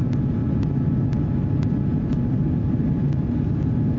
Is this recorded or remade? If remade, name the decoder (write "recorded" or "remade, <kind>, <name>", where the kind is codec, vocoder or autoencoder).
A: recorded